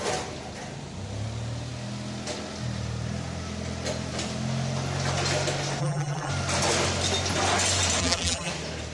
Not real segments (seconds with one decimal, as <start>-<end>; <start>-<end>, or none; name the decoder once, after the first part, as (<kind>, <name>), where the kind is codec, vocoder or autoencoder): 5.8-6.3 (vocoder, BigVGAN v2); 8.0-8.5